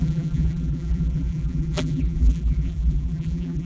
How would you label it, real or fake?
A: fake